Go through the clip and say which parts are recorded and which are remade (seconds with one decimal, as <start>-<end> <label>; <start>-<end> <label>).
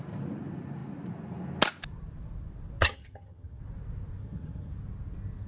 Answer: 0.0-2.8 recorded; 2.8-3.6 remade; 3.6-4.2 recorded; 4.2-4.7 remade; 4.7-5.5 recorded